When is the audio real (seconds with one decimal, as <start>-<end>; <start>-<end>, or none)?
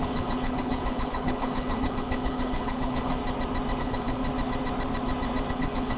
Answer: 3.2-3.8; 4.2-5.5